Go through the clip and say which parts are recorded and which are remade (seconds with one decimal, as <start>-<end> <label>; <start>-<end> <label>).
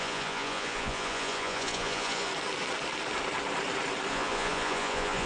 0.0-2.3 remade; 2.3-4.1 recorded; 4.1-5.3 remade